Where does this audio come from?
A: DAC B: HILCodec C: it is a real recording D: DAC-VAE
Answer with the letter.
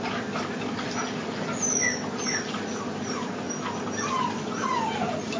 C